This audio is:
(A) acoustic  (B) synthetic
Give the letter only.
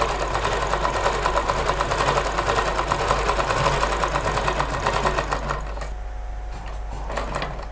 A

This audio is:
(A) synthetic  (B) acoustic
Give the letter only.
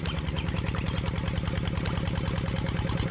B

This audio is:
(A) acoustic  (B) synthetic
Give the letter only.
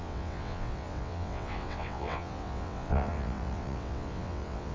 B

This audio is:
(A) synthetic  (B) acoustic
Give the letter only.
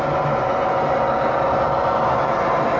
B